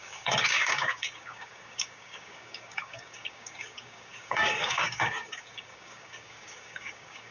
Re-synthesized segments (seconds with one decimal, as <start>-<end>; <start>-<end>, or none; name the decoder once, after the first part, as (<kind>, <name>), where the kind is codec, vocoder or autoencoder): 0.0-7.3 (codec, DAC)